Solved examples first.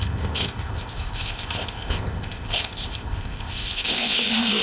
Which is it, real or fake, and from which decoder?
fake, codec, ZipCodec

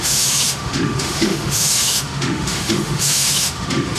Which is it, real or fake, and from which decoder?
fake, autoencoder, DAC-VAE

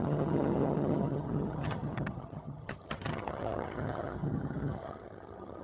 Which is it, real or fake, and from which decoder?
fake, vocoder, HiFi-GAN